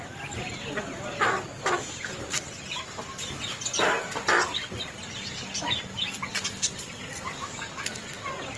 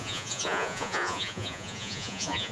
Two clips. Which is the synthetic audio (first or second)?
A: second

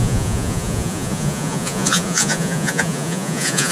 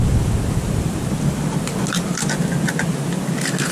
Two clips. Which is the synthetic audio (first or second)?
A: first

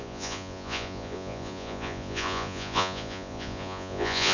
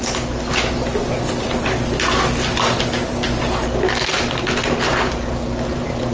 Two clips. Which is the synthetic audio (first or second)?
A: first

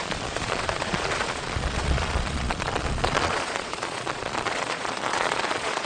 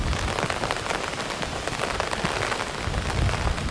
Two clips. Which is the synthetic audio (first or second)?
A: first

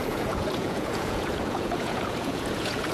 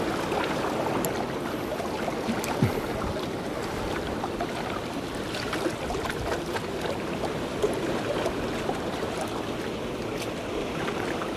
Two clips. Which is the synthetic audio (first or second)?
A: first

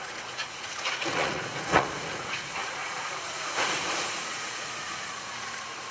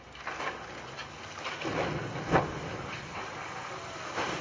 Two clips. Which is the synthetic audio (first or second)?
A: first